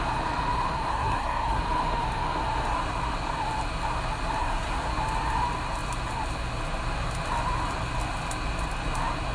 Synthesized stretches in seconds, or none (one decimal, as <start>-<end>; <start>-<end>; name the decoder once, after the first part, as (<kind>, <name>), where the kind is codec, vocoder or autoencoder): 0.9-1.6 (codec, SNAC); 4.4-4.9